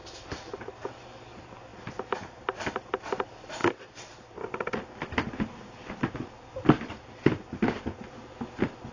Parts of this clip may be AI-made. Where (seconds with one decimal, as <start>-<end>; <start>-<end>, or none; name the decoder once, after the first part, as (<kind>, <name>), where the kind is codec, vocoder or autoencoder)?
1.7-2.7 (vocoder, BigVGAN v2); 3.6-4.7